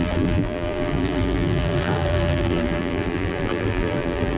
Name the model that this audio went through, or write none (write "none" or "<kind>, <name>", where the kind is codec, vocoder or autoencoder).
vocoder, BigVGAN v2